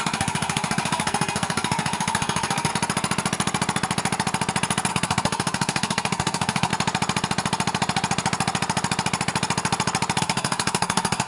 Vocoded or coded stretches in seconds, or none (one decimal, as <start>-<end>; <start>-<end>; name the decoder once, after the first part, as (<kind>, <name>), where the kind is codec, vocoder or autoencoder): 0.0-2.7 (codec, SNAC); 4.9-6.7; 10.2-11.3